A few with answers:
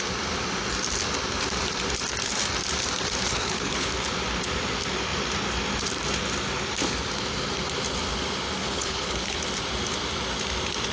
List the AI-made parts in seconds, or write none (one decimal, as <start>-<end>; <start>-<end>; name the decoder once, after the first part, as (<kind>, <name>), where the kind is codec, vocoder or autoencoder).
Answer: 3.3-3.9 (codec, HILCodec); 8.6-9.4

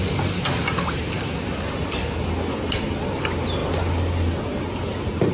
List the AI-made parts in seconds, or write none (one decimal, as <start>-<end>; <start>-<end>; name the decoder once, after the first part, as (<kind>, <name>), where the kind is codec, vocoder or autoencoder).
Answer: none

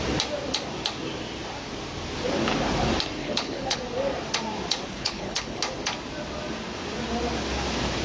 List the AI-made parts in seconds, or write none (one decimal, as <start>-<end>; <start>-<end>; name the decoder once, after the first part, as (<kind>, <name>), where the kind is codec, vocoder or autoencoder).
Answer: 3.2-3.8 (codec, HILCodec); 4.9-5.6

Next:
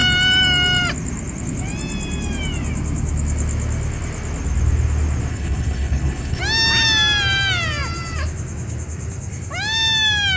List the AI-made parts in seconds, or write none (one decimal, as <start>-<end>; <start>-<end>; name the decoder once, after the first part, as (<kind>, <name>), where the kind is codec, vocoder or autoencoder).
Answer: 5.3-6.4 (codec, HILCodec)

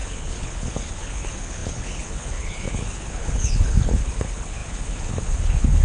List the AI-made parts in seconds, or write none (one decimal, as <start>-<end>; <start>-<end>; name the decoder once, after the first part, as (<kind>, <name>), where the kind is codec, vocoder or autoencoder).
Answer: 0.0-5.8 (codec, HILCodec)

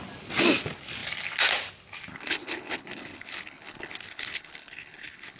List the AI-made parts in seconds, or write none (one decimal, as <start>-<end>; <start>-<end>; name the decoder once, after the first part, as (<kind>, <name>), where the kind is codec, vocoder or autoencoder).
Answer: 2.1-5.4 (codec, HILCodec)

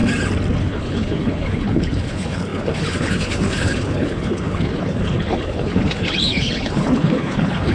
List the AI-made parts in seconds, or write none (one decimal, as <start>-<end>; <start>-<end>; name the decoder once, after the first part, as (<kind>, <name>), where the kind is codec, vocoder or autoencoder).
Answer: 0.6-7.7 (codec, HILCodec)

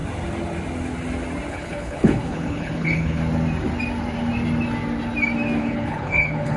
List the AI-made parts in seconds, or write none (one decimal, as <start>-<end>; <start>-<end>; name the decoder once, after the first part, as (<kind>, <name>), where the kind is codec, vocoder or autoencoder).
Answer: 1.5-3.2 (codec, HILCodec); 5.6-6.6